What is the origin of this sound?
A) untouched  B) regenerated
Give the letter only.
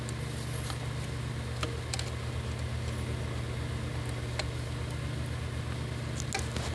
A